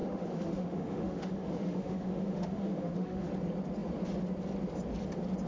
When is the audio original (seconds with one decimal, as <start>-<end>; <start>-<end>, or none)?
3.3-5.5